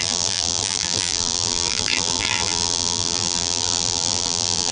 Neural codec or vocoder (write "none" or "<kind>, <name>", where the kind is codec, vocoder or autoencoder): vocoder, BigVGAN v2